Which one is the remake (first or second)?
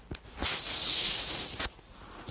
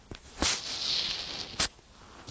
first